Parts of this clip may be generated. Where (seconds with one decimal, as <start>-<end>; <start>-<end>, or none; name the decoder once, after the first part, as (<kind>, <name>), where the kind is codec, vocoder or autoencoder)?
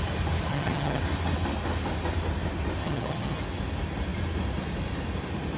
0.5-1.0 (vocoder, HiFi-GAN); 2.8-3.4